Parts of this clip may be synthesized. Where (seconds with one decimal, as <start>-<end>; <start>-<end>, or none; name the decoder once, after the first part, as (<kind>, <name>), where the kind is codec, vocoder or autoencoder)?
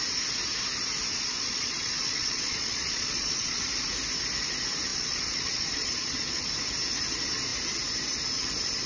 1.1-3.6 (vocoder, Vocos); 4.9-6.6